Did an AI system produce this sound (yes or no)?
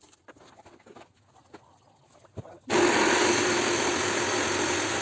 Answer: no